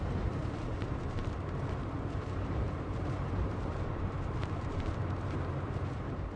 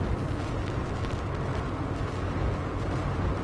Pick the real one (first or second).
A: second